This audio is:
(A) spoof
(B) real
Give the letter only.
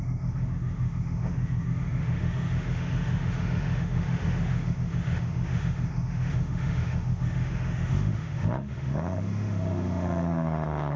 A